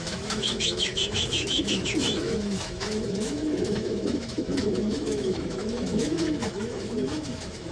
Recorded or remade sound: remade